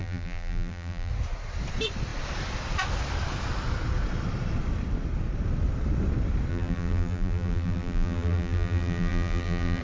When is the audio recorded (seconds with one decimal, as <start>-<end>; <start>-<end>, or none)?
1.1-6.5